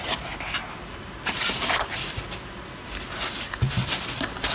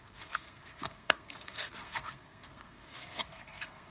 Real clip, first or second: first